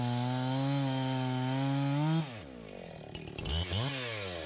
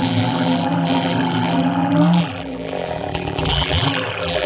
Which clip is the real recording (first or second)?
first